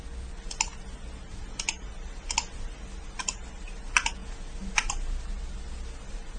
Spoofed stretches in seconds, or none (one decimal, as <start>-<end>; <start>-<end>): none